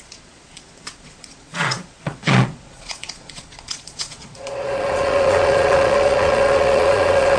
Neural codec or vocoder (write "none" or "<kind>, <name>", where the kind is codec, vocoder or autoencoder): vocoder, Vocos